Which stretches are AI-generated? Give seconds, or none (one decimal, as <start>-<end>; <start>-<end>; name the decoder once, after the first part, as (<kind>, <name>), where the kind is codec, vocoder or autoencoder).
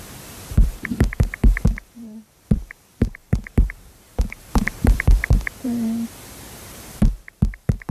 0.0-7.9 (vocoder, BigVGAN v2)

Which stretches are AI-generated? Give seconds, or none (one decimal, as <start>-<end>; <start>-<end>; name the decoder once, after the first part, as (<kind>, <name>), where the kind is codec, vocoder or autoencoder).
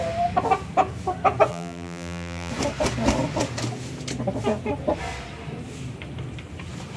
1.5-2.5 (vocoder, BigVGAN v2)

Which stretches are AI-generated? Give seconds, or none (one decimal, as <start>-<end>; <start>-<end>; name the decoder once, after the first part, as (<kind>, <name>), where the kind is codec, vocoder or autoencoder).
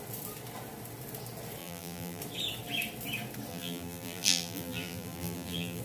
1.6-2.2 (vocoder, BigVGAN v2); 3.5-5.8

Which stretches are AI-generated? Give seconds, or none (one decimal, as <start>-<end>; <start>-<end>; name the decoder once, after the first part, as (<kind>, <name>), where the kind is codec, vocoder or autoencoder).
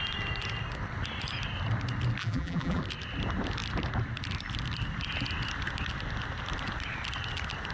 2.2-2.8 (vocoder, BigVGAN v2)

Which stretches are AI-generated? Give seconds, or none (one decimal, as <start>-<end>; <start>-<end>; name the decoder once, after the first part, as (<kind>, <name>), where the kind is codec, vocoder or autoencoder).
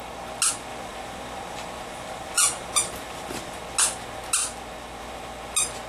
0.7-3.6 (vocoder, BigVGAN v2)